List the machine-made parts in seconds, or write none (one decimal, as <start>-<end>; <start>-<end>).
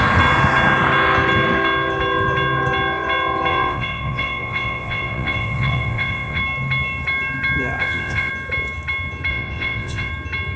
3.5-6.4; 7.8-8.3; 9.3-10.1